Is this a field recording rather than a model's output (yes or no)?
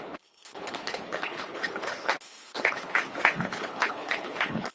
no